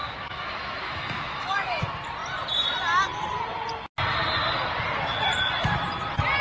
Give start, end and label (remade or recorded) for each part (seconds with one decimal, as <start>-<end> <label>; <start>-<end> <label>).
0.0-1.8 remade; 1.8-6.4 recorded